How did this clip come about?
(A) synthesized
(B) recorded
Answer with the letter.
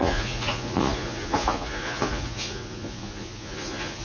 A